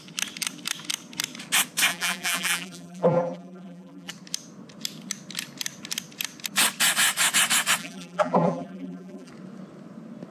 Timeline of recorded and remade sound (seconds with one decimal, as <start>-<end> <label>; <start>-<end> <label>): 0.0-1.9 recorded; 1.9-4.1 remade; 4.1-7.8 recorded; 7.8-9.3 remade; 9.3-10.3 recorded